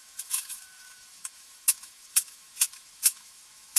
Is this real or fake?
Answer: fake